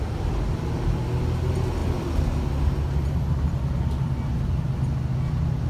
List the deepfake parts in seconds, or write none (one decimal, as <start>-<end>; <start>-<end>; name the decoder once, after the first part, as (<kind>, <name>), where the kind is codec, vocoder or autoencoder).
none